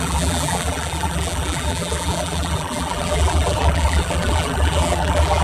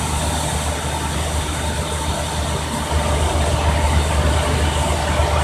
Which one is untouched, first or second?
second